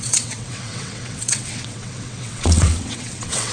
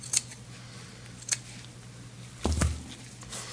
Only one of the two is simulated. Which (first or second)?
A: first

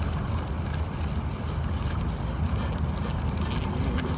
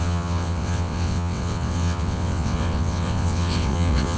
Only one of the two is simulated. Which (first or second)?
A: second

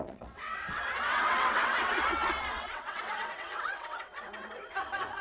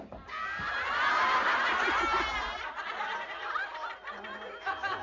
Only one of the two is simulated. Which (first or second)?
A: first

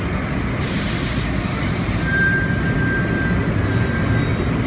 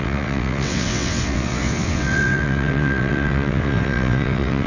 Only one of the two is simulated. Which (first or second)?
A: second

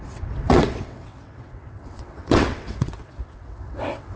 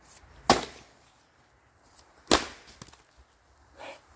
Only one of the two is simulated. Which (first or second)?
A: first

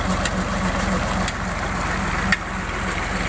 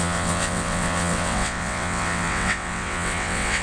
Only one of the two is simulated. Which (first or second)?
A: second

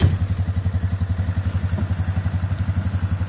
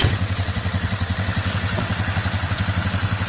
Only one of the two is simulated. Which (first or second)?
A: second